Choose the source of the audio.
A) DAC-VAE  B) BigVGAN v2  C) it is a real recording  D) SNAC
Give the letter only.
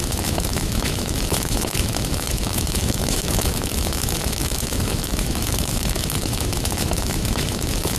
A